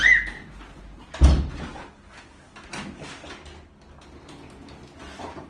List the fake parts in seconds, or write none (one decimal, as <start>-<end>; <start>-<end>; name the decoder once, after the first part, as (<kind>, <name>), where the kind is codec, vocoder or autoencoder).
none